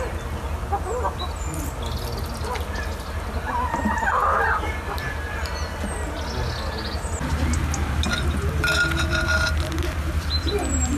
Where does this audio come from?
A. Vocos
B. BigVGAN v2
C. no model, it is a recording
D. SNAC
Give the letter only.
C